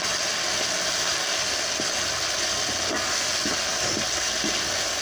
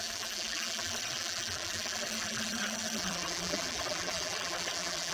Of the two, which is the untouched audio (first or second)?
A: first